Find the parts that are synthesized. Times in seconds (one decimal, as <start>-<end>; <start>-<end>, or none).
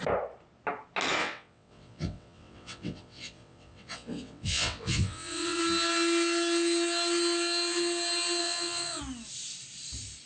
1.2-5.6; 8.4-9.0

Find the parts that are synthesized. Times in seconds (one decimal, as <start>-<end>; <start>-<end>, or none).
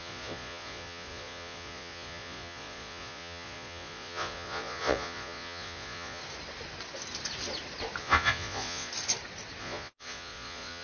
0.0-6.2; 8.0-8.9; 9.6-10.8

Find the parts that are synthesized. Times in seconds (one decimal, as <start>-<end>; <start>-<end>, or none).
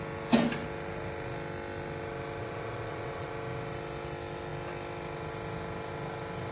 2.4-3.3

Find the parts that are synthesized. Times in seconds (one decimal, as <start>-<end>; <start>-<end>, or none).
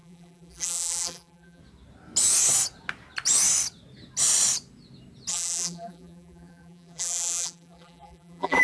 0.0-1.6; 5.3-8.6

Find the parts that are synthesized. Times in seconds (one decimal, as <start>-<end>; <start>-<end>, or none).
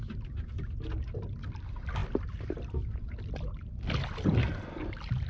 none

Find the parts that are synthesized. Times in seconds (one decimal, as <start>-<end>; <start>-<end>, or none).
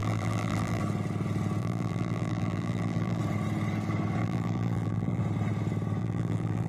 0.0-0.8; 1.6-3.2; 4.2-5.2; 6.0-6.7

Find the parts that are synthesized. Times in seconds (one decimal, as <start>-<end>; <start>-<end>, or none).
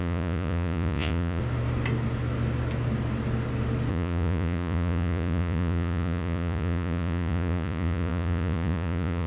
0.0-1.4; 3.9-9.3